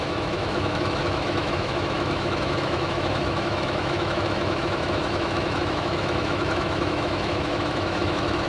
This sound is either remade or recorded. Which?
remade